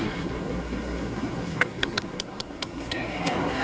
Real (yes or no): no